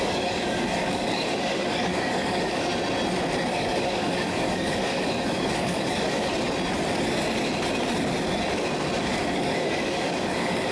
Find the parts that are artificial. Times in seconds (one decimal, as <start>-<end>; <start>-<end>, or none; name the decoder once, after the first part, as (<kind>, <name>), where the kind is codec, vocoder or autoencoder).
0.0-2.7 (codec, DAC); 3.5-6.3; 9.0-10.7